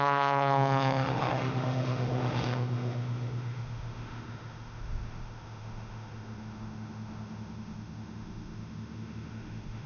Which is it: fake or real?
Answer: fake